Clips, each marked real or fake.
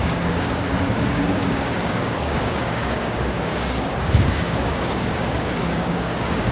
fake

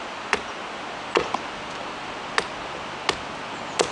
real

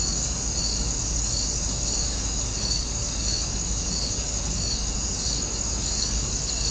fake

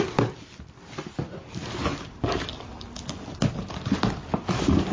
real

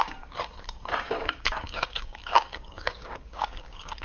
fake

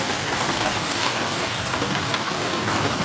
fake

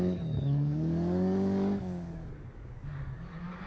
fake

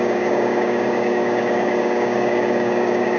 fake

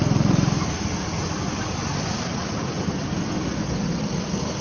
real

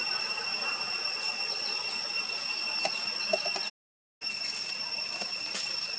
real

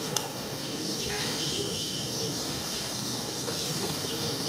fake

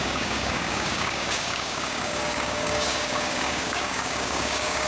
fake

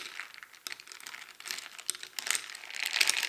real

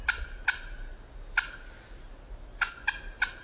real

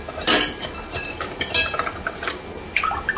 real